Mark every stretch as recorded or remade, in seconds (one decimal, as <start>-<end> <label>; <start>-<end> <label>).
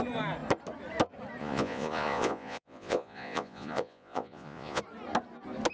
0.0-1.4 recorded; 1.4-4.8 remade; 4.8-5.7 recorded